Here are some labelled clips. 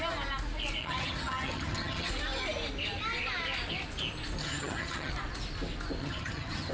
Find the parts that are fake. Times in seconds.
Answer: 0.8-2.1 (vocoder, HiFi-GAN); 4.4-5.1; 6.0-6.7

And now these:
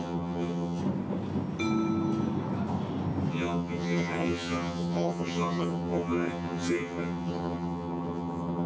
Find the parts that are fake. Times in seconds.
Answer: 0.0-0.8 (vocoder, HiFi-GAN); 3.3-8.7

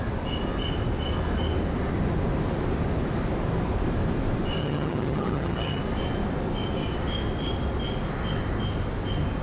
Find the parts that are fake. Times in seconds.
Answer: 4.6-5.8 (vocoder, HiFi-GAN)